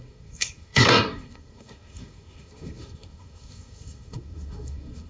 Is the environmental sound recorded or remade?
remade